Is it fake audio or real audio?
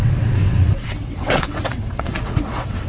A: fake